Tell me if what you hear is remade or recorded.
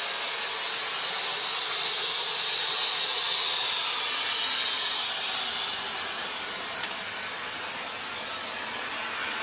recorded